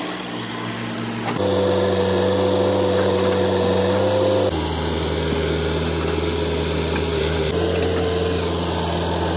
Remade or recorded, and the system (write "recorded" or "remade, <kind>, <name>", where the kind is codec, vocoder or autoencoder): recorded